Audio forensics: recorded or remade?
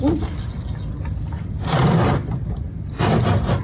recorded